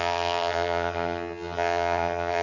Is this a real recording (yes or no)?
no